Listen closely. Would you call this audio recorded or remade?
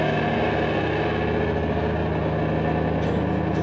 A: recorded